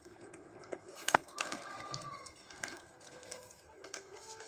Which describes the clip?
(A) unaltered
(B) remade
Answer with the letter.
B